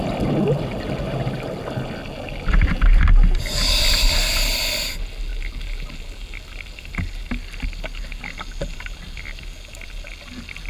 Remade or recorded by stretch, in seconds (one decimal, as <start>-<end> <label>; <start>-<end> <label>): 0.0-10.7 recorded